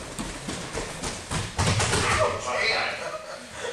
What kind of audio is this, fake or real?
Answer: real